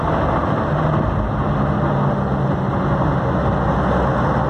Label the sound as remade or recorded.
recorded